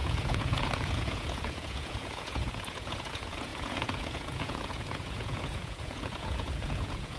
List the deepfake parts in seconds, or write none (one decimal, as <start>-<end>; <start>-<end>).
0.0-7.2